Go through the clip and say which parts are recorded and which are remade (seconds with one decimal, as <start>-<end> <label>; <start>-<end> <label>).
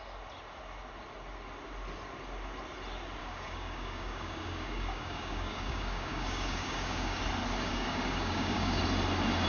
0.0-3.2 recorded; 3.2-7.2 remade; 7.2-7.7 recorded; 7.7-8.8 remade; 8.8-9.5 recorded